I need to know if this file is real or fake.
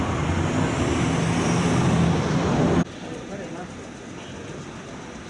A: real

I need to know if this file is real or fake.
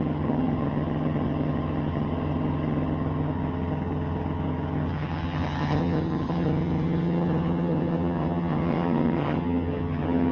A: fake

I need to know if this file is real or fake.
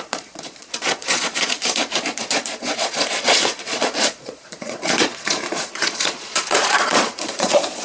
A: fake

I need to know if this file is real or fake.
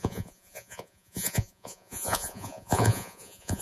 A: fake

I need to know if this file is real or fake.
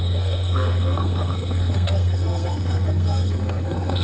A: fake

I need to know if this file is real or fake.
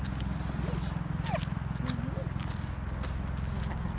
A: real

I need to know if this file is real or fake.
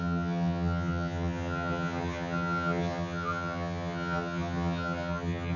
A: fake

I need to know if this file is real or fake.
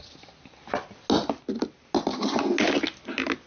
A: real